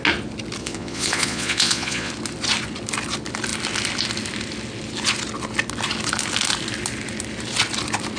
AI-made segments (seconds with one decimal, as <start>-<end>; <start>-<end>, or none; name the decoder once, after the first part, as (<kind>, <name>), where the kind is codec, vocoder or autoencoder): 0.6-2.1 (vocoder, Vocos)